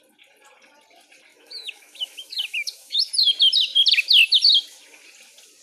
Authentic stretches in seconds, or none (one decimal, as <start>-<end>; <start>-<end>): 0.0-1.3; 3.1-5.6